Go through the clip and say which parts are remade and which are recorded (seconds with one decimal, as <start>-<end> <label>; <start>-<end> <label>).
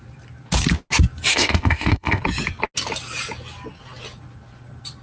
0.0-1.3 recorded; 1.3-2.2 remade; 2.2-5.0 recorded